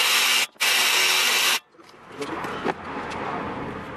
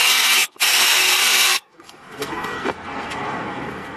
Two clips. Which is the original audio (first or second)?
first